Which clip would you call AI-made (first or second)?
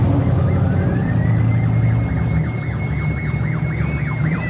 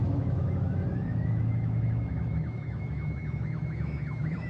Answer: second